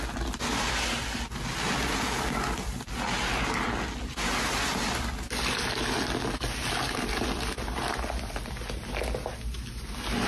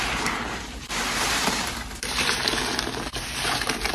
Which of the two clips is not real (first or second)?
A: second